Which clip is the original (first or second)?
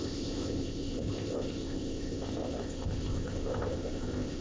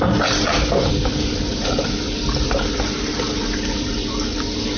second